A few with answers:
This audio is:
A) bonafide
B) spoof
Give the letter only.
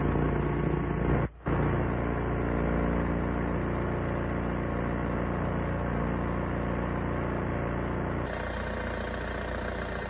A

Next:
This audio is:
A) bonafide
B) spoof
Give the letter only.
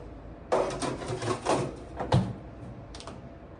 A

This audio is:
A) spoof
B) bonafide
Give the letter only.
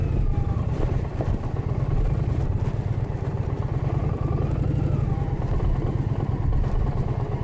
B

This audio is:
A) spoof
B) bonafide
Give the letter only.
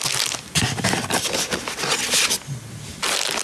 B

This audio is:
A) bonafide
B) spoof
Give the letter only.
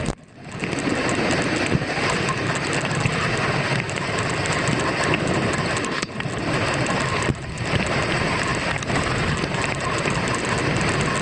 A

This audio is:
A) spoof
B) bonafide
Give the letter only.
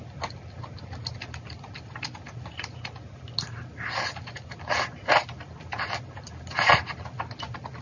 B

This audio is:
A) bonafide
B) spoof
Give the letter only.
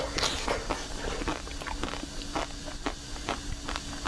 A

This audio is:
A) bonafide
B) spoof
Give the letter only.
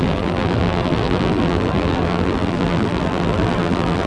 B